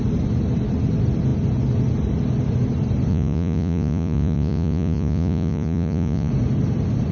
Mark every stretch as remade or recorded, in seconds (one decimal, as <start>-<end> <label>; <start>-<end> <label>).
0.0-3.1 recorded; 3.1-6.3 remade; 6.3-7.1 recorded